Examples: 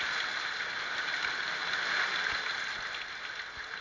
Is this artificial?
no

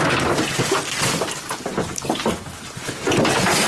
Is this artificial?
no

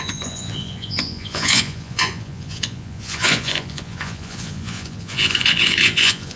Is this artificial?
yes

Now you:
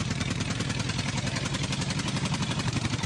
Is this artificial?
yes